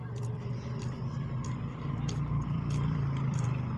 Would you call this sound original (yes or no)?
no